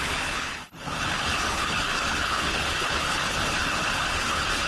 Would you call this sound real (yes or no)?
no